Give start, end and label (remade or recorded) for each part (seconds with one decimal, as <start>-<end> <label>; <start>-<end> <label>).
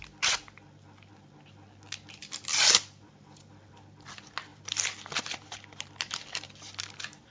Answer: 0.0-2.2 recorded; 2.2-3.7 remade; 3.7-4.5 recorded; 4.5-5.2 remade; 5.2-7.3 recorded